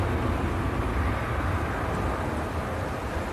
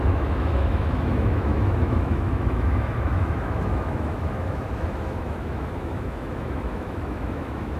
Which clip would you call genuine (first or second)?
first